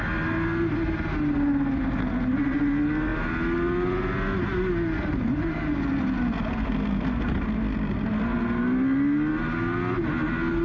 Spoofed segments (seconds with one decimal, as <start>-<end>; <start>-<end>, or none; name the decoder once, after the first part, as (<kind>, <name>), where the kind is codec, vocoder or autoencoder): 6.5-7.2 (codec, SNAC)